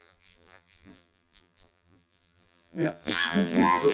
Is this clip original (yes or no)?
no